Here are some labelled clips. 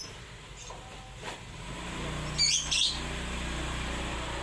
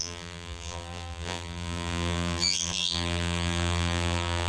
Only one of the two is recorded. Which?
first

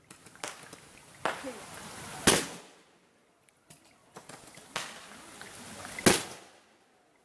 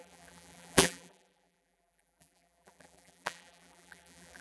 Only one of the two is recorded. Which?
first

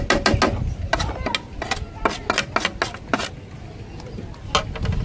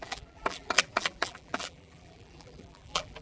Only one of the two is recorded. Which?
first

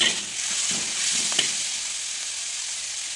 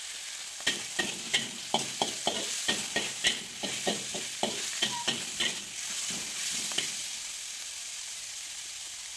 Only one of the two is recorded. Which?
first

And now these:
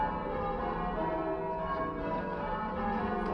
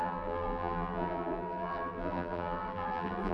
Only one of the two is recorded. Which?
first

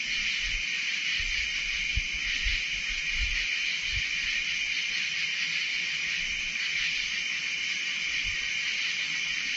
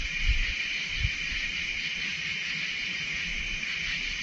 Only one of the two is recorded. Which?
first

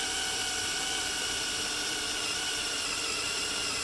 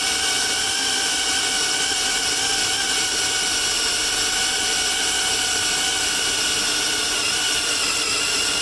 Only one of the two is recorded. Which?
second